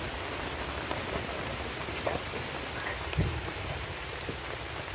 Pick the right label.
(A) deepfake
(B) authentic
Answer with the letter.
B